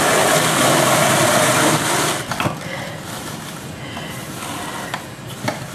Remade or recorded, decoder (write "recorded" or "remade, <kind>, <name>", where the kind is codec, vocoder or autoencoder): recorded